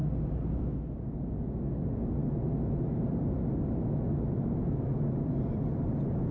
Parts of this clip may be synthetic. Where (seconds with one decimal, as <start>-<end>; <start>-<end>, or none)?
none